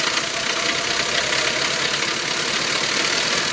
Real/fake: real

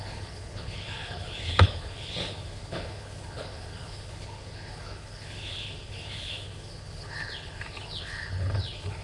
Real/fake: fake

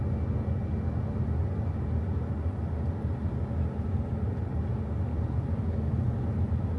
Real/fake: real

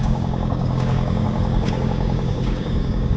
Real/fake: fake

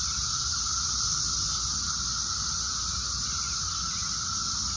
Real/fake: real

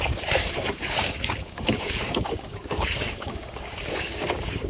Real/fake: fake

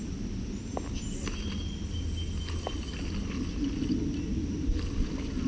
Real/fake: real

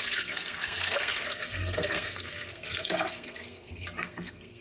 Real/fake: fake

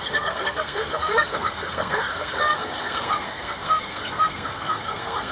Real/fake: fake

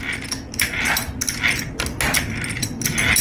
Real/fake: real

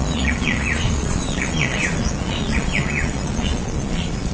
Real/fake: fake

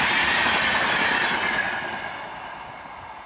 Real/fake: real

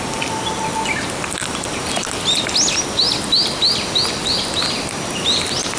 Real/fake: real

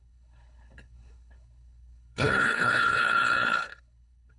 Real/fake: fake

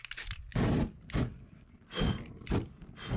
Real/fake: real